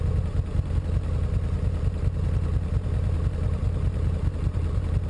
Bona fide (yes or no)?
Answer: yes